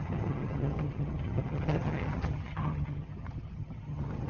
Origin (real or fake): fake